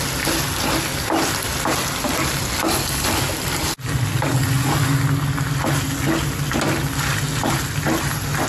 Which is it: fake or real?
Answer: real